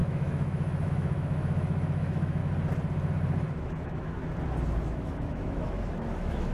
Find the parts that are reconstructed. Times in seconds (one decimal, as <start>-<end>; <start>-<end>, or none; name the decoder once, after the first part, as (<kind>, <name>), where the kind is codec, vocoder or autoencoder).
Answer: 0.0-2.4 (autoencoder, DAC-VAE); 3.6-4.2; 4.8-6.5